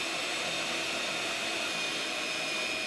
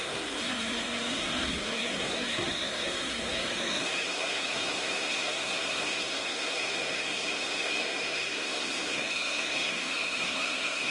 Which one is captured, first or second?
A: first